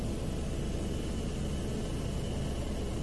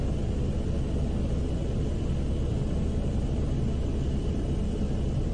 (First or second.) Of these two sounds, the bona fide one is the first